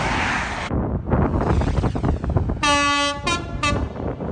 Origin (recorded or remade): recorded